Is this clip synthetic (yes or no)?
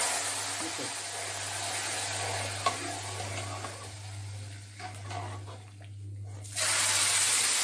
no